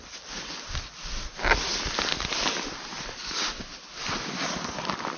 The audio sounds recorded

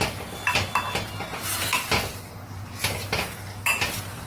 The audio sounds recorded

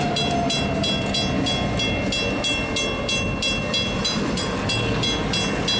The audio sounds recorded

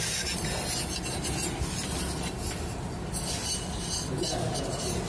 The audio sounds recorded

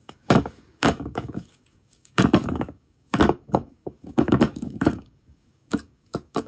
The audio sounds remade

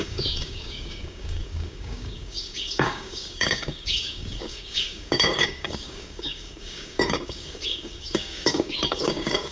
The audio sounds remade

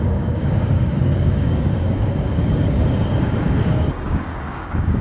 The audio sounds remade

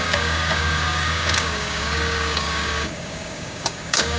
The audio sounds remade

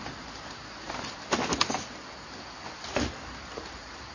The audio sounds recorded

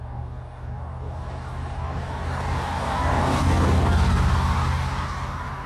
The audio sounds remade